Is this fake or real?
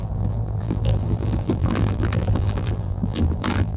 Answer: fake